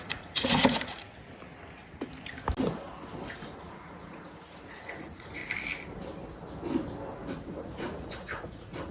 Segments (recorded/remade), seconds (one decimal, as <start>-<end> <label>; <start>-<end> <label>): 0.0-1.0 remade; 1.0-3.3 recorded; 3.3-5.4 remade; 5.4-7.4 recorded; 7.4-8.9 remade